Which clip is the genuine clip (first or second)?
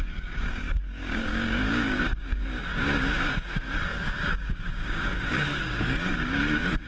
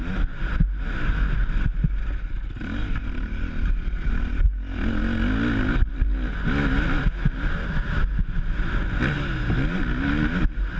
second